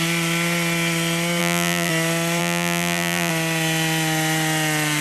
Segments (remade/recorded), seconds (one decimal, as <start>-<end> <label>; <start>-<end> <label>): 0.0-1.4 recorded; 1.4-1.9 remade; 1.9-2.4 recorded; 2.4-3.3 remade; 3.3-5.0 recorded